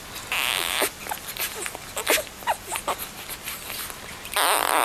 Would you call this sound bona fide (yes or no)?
yes